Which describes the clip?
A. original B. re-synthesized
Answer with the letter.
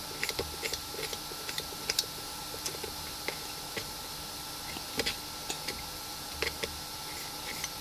A